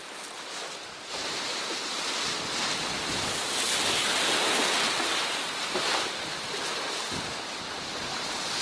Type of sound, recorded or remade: recorded